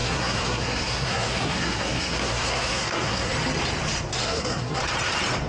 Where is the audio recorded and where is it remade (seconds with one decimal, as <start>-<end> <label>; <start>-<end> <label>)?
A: 0.0-3.3 remade; 3.3-4.2 recorded; 4.2-4.8 remade; 4.8-5.5 recorded